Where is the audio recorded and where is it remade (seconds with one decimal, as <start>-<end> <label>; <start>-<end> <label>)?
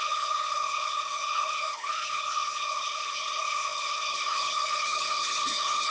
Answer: 0.0-5.9 remade